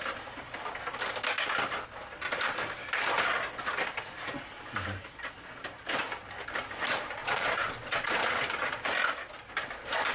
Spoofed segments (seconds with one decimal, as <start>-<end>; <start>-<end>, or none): 7.2-8.2